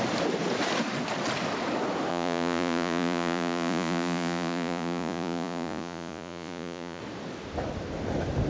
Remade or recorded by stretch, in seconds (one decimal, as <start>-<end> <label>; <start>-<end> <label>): 0.0-2.1 recorded; 2.1-7.0 remade; 7.0-8.5 recorded